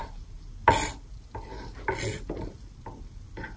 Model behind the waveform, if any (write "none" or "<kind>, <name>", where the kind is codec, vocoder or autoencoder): none